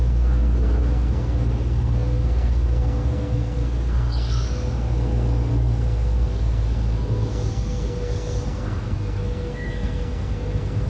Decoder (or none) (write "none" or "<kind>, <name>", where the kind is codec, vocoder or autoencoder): codec, SNAC